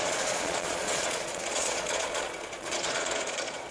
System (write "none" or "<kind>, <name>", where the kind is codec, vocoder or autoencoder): vocoder, Vocos